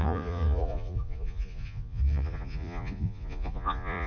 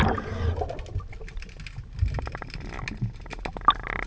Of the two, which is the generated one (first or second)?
first